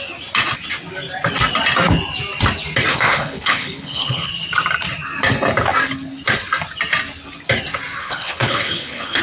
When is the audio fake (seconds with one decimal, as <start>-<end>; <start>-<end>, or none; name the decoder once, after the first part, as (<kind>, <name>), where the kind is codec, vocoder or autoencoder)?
2.9-4.3 (codec, HILCodec); 8.0-9.2